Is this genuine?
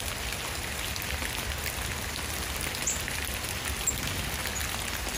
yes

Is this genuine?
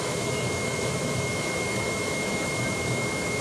no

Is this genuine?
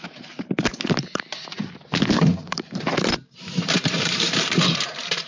no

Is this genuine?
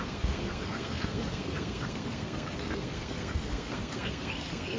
no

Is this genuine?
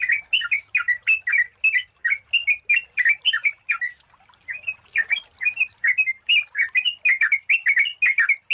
yes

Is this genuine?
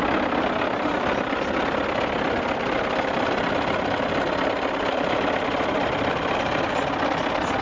yes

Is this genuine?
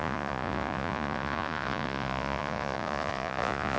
no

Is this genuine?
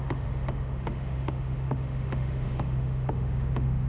no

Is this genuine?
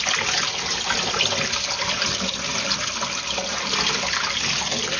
yes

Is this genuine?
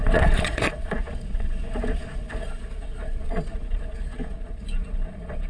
no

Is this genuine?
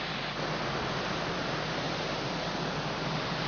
yes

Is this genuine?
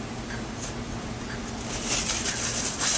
yes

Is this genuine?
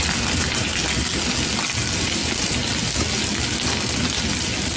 yes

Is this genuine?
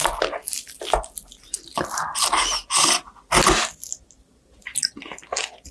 yes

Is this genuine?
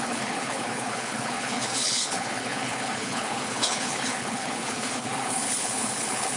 no